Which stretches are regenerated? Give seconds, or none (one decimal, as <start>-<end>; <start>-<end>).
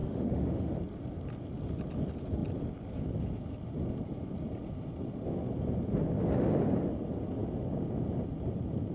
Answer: 0.0-0.7